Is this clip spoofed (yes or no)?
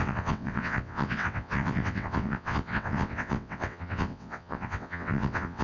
yes